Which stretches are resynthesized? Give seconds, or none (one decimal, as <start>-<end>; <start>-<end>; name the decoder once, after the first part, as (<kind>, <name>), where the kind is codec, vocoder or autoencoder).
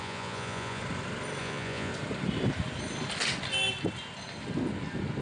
0.0-0.8 (vocoder, Vocos); 1.4-1.9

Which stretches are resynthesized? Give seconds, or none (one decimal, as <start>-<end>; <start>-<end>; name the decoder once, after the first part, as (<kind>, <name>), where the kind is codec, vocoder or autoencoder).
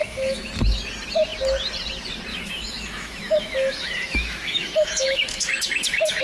0.0-0.5 (autoencoder, DAC-VAE); 2.3-6.2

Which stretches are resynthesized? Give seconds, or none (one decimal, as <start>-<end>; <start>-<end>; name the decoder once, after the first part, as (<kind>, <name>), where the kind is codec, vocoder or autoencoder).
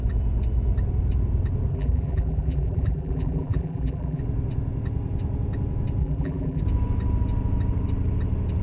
1.7-4.2 (vocoder, BigVGAN v2); 6.0-6.6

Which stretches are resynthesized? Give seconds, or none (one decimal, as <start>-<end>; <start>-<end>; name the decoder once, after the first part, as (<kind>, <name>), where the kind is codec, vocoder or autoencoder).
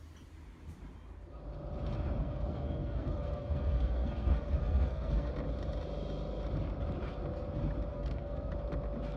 2.2-5.3 (codec, SNAC); 7.9-8.5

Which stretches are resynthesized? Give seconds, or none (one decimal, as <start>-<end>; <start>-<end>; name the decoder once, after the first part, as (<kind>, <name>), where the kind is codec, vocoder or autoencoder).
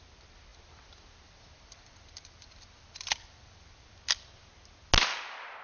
0.5-3.9 (vocoder, BigVGAN v2)